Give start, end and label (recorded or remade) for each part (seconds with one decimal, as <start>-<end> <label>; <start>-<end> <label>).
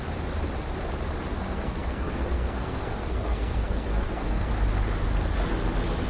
0.0-1.4 recorded; 1.4-4.5 remade; 4.5-6.1 recorded